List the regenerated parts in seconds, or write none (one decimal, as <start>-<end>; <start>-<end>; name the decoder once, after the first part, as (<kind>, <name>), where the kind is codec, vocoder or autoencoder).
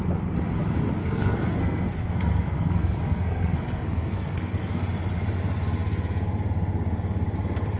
1.0-4.8 (codec, SNAC)